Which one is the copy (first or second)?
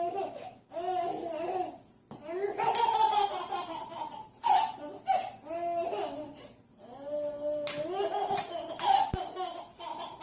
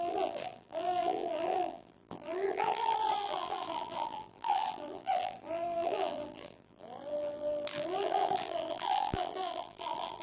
second